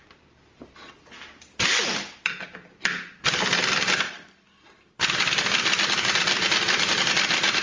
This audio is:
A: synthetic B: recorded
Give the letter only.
B